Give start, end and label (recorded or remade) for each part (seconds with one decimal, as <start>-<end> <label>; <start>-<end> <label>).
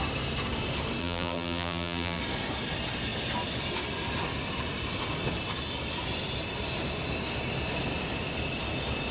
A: 0.0-1.0 recorded; 1.0-2.2 remade; 2.2-9.1 recorded